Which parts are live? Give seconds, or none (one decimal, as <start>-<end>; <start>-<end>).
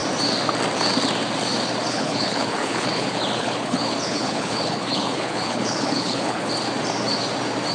0.0-1.9; 6.5-7.7